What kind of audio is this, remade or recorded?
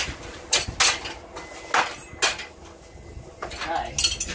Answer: recorded